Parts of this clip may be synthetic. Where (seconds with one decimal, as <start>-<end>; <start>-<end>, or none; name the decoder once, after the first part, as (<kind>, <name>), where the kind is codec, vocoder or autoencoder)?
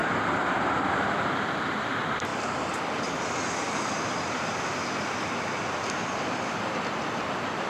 0.0-2.3 (vocoder, BigVGAN v2); 6.2-7.7